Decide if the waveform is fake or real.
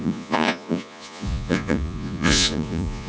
fake